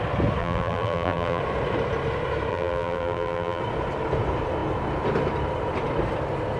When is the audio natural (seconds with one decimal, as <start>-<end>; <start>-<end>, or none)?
0.0-0.4; 1.4-2.5; 3.6-6.6